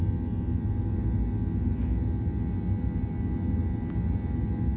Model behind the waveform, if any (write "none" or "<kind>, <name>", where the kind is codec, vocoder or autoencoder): none